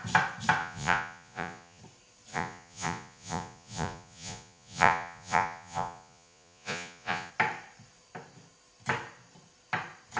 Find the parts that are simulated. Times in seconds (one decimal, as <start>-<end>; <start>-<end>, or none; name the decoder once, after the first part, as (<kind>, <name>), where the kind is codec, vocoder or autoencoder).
0.6-1.8 (vocoder, Vocos); 2.3-7.3